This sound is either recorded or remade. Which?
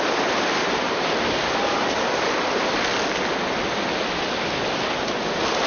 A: recorded